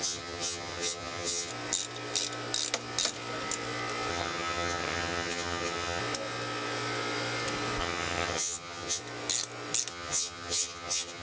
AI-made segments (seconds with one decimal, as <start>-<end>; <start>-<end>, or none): 0.0-1.5; 4.1-6.0; 7.8-9.0; 9.9-11.2